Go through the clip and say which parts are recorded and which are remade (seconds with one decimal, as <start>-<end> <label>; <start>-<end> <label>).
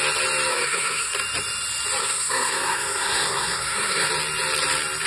0.0-0.5 recorded; 0.5-1.1 remade; 1.1-2.0 recorded; 2.0-4.1 remade; 4.1-5.1 recorded